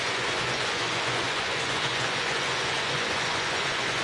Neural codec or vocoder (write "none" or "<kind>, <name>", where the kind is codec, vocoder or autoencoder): vocoder, Vocos